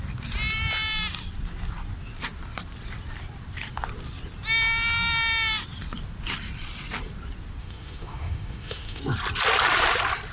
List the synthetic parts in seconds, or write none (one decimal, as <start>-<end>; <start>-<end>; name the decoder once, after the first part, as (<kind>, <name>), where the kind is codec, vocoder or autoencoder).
7.6-9.0 (autoencoder, DAC-VAE)